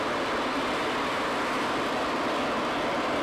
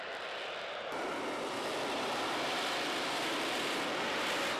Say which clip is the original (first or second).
first